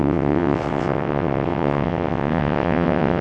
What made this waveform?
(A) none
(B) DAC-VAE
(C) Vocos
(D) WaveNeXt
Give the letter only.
D